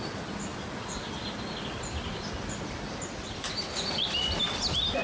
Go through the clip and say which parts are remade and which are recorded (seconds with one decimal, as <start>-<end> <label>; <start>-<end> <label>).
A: 0.0-5.0 recorded